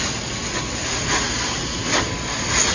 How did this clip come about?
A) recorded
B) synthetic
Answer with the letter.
A